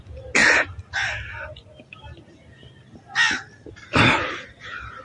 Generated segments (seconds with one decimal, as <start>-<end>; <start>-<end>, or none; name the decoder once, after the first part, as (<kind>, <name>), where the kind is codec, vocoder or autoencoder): none